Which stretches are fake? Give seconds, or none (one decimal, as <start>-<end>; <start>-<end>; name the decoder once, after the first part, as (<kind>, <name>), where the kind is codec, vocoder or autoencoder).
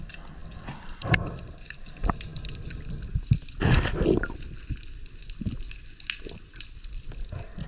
0.4-1.2 (vocoder, BigVGAN v2)